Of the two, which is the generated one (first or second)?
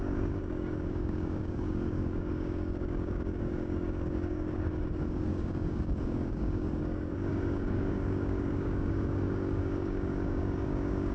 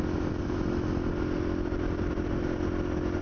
first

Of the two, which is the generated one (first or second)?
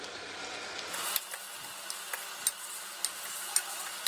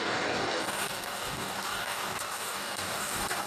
second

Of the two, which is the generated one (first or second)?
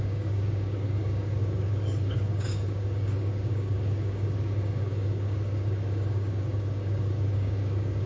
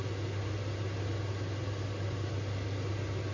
first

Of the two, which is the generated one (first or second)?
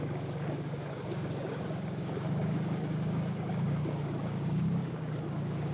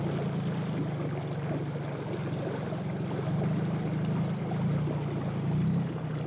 first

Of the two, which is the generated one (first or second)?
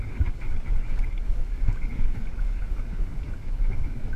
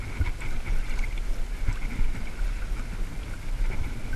first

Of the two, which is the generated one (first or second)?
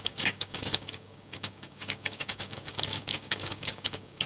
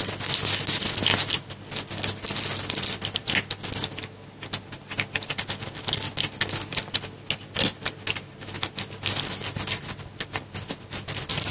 first